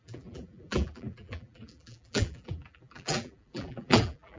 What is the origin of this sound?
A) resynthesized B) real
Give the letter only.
A